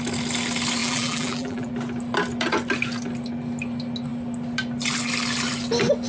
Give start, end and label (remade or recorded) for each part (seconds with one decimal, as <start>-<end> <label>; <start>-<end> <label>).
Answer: 0.0-0.8 recorded; 0.8-1.7 remade; 1.7-6.1 recorded